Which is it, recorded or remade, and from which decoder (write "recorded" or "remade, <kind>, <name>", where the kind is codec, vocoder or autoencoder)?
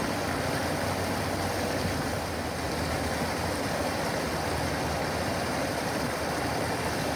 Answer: recorded